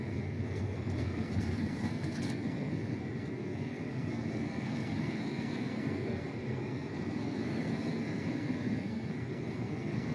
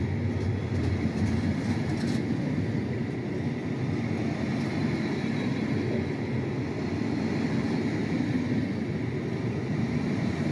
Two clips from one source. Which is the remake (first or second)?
first